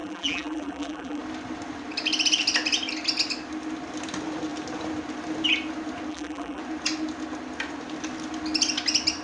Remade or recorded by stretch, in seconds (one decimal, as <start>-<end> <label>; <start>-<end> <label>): 0.0-1.2 remade; 1.2-6.1 recorded; 6.1-6.6 remade; 6.6-9.2 recorded